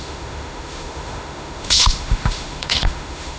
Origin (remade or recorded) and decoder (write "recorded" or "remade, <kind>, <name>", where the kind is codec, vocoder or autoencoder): remade, autoencoder, DAC-VAE